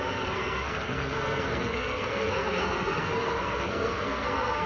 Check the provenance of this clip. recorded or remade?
remade